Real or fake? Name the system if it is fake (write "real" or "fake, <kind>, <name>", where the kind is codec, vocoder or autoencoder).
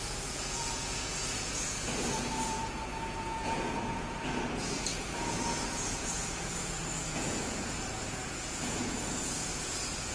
fake, vocoder, Vocos